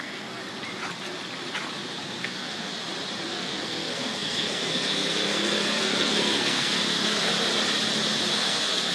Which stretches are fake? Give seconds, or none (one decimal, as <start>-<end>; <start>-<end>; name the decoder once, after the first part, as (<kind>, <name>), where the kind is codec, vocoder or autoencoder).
0.0-0.4 (codec, SNAC); 2.0-2.7; 3.3-7.3; 8.3-8.9